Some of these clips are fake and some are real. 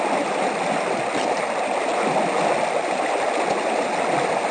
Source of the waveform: real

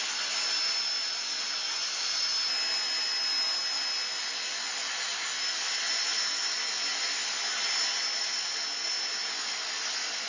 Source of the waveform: real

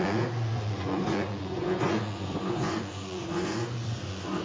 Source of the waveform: fake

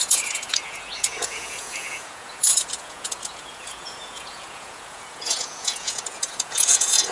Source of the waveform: fake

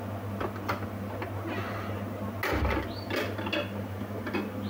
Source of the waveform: real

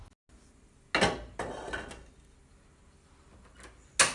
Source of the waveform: real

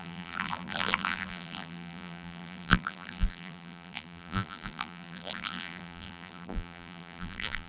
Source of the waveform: fake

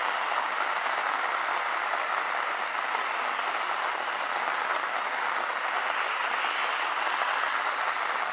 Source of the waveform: real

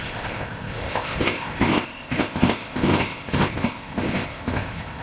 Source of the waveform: fake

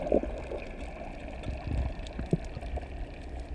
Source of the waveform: real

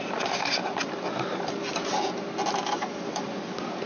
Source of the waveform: real